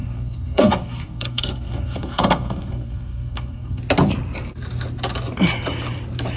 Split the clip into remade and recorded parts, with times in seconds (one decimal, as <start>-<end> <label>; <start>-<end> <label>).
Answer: 0.0-3.8 remade; 3.8-6.4 recorded